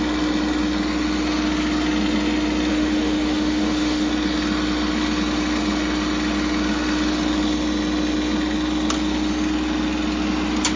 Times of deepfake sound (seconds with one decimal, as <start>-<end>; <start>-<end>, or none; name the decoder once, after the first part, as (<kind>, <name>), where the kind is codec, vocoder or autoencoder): 2.7-4.1 (autoencoder, DAC-VAE)